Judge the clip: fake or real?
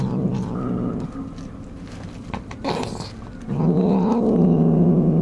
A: real